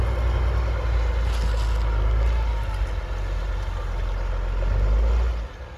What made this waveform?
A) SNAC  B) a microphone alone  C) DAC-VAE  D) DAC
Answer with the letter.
B